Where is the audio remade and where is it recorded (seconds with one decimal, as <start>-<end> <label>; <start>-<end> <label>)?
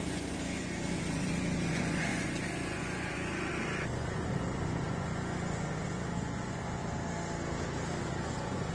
0.0-6.8 remade; 6.8-8.0 recorded; 8.0-8.7 remade